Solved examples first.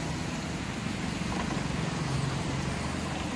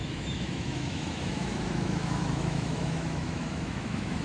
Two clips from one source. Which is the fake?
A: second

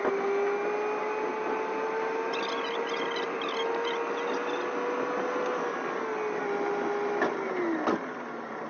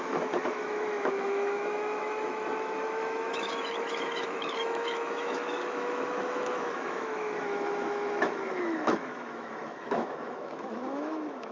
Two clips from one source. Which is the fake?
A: second